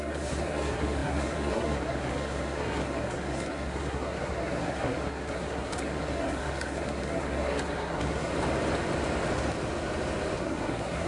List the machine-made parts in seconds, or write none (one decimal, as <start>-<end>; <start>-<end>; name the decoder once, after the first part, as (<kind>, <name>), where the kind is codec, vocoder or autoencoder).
0.0-8.3 (codec, SNAC); 10.4-11.1

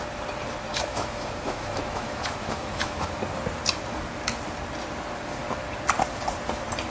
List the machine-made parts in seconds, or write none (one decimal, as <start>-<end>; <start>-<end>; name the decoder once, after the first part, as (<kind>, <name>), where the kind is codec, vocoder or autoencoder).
0.7-3.2 (autoencoder, DAC-VAE)

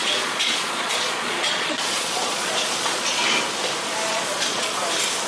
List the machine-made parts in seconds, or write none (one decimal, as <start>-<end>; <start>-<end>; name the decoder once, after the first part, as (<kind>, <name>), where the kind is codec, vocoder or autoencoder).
0.0-3.2 (vocoder, Vocos); 4.1-4.8

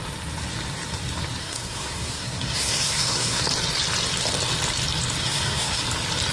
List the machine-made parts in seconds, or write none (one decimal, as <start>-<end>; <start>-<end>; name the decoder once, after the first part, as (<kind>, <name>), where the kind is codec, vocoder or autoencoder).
1.4-3.4 (codec, SNAC); 5.2-5.8

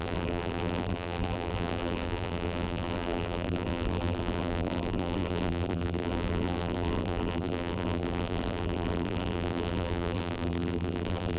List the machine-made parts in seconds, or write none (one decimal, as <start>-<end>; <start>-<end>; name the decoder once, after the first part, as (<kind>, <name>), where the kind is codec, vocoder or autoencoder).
0.0-11.4 (vocoder, BigVGAN v2)

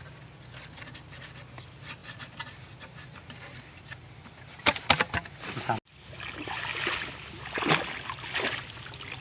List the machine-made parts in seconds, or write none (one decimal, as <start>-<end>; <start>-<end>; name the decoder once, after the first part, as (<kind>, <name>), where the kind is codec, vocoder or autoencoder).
none

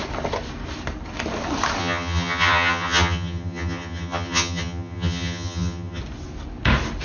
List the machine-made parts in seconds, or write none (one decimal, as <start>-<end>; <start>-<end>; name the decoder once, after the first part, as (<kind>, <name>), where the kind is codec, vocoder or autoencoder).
1.8-6.0 (vocoder, HiFi-GAN)

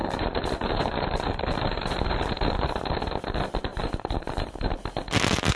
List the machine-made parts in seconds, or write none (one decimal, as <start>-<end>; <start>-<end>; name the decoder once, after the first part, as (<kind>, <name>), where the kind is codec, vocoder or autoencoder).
0.0-2.9 (vocoder, BigVGAN v2); 3.7-4.7